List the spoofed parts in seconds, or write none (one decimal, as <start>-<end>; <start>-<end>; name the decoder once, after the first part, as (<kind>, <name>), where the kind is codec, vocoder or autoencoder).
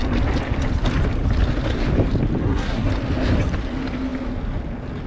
2.4-2.9 (codec, SNAC)